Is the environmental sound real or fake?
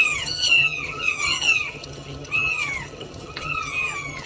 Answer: fake